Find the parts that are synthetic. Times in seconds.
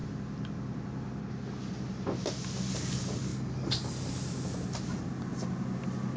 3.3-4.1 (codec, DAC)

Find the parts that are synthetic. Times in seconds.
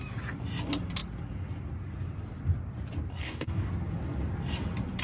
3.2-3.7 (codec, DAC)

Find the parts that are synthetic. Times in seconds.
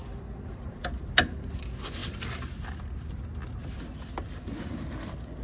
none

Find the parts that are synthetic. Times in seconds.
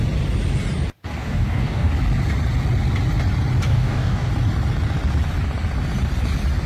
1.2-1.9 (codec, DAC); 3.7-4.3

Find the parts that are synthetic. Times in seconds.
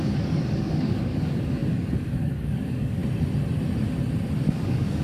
0.0-3.0 (codec, DAC); 4.5-5.0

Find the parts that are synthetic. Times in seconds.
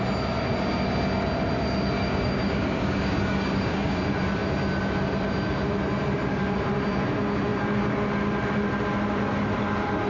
2.0-4.0 (codec, DAC)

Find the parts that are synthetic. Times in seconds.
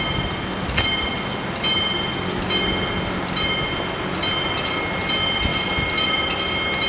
none